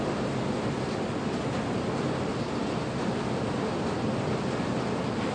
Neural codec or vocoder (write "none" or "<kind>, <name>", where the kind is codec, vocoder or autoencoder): none